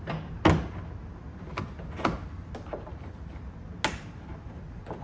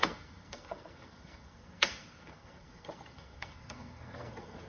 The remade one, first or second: second